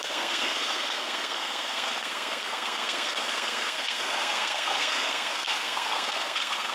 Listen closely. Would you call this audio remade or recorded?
remade